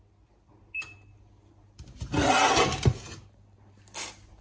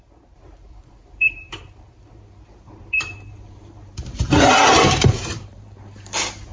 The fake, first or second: second